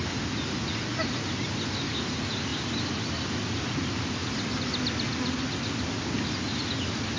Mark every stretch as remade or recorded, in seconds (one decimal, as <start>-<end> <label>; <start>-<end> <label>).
0.0-7.2 recorded